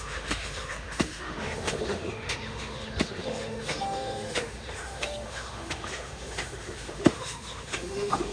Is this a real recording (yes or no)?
no